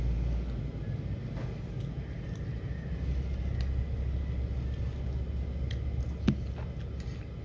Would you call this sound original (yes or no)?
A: yes